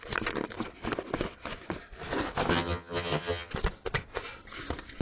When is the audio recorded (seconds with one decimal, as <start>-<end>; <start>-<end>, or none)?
0.0-2.5; 3.5-5.0